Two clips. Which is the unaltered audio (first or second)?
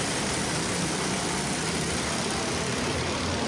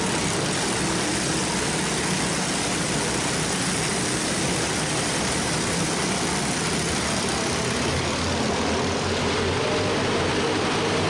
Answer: second